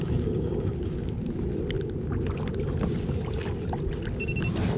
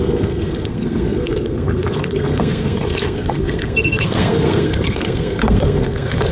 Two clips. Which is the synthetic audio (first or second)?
second